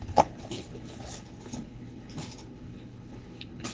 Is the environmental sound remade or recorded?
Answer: remade